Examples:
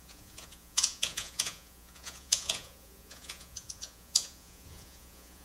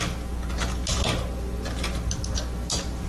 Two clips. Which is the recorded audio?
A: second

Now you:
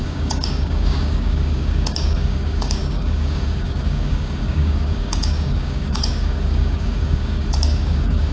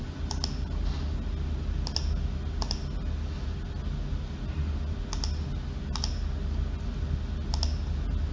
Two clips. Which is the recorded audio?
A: second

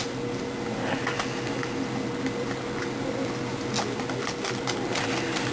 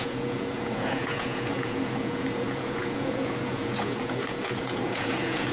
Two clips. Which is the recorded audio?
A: first